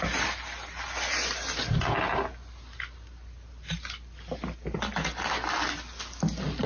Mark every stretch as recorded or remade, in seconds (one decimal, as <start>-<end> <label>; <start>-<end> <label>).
0.0-6.7 recorded